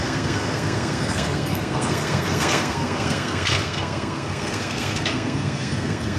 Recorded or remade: remade